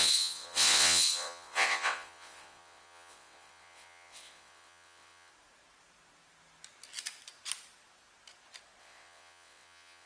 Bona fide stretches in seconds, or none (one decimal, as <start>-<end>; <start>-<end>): 5.3-8.8